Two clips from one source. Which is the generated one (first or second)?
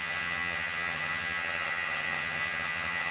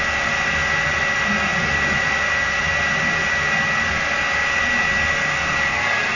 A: first